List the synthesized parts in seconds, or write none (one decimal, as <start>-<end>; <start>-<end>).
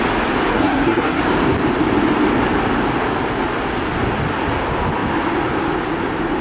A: 0.5-1.2